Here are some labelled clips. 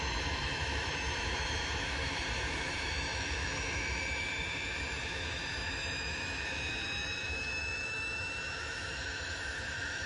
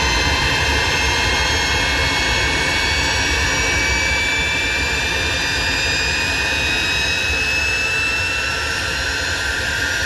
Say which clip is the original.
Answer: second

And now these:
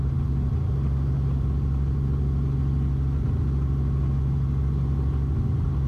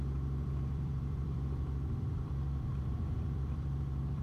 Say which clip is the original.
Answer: first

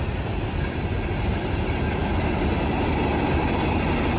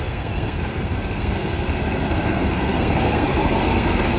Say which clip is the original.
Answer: first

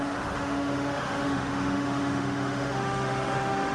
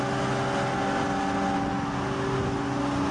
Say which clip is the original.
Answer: second